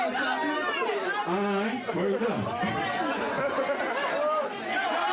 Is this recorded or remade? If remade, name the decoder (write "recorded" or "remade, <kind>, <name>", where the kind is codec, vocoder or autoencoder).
recorded